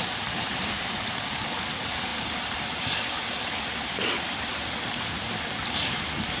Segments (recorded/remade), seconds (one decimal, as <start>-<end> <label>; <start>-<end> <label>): 0.0-2.1 recorded; 2.1-3.5 remade; 3.5-6.4 recorded